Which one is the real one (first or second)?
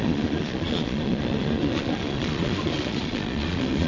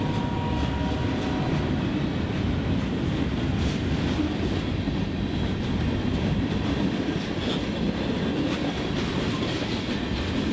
second